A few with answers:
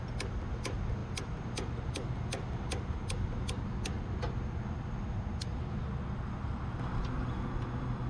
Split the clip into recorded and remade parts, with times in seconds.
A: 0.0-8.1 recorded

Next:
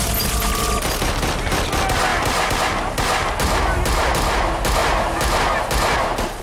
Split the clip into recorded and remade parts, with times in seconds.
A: 0.0-6.4 recorded

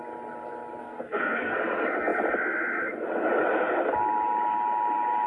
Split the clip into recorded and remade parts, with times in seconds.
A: 0.0-0.8 recorded; 0.8-1.5 remade; 1.5-5.3 recorded

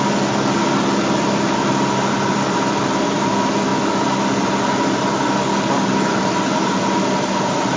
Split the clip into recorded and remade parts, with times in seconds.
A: 0.0-7.8 recorded